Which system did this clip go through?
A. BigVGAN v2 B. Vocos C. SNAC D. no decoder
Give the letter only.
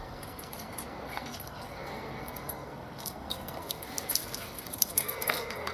C